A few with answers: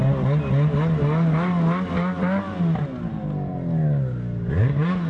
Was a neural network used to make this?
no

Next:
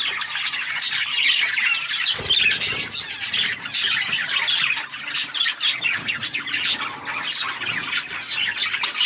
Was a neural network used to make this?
no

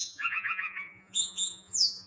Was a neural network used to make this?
yes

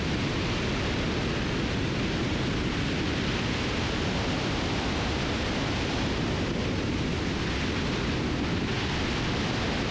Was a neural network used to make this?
no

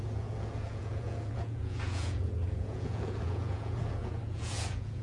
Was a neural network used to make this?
yes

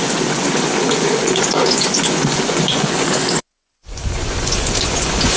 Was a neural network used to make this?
yes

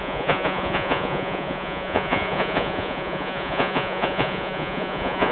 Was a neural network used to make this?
yes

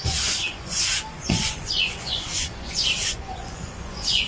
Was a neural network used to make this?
yes